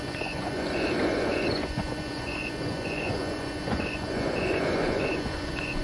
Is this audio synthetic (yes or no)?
yes